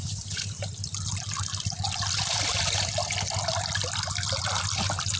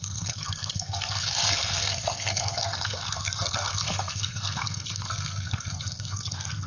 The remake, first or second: second